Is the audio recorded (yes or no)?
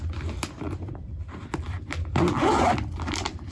yes